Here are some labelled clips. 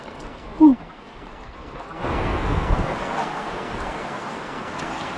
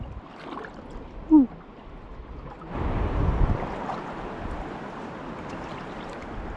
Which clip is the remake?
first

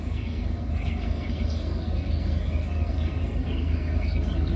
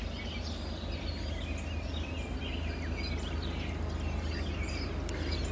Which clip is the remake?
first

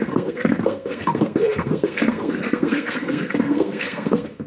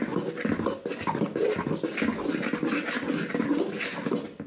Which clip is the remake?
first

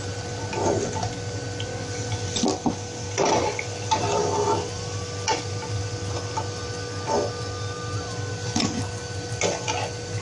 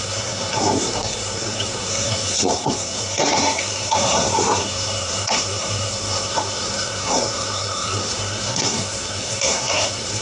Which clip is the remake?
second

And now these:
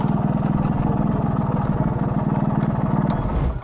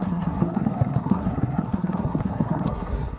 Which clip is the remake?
second